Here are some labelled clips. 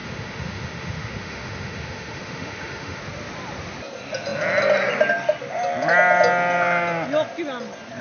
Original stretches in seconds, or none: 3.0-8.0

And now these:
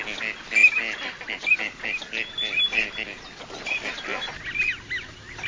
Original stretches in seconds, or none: 0.0-5.5

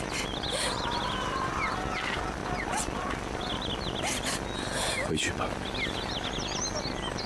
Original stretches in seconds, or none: 0.0-7.3